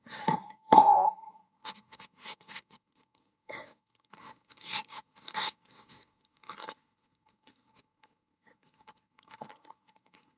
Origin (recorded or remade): remade